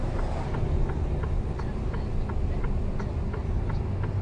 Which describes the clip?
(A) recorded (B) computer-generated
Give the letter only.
A